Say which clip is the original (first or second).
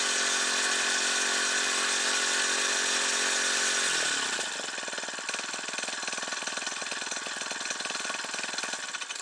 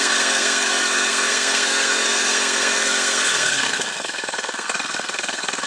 first